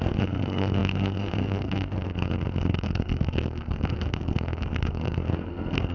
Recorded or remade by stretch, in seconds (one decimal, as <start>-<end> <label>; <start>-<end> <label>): 0.0-5.9 remade